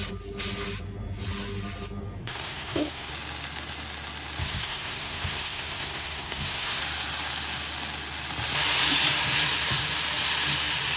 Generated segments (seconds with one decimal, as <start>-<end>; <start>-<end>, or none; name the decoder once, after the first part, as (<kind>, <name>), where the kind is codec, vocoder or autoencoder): 2.2-3.1 (codec, SNAC); 4.4-6.8